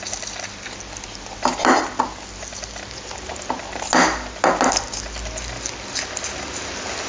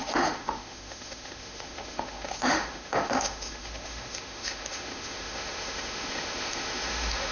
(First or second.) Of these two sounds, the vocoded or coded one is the second